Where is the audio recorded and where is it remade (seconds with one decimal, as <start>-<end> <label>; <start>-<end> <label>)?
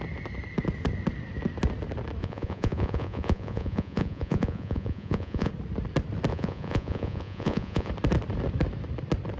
0.0-2.2 recorded; 2.2-5.5 remade; 5.5-6.3 recorded; 6.3-7.9 remade; 7.9-9.4 recorded